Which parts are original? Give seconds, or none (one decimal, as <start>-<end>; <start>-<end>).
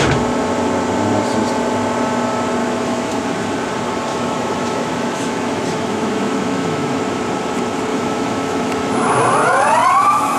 0.0-2.6; 3.2-4.1; 7.0-7.9; 9.1-10.4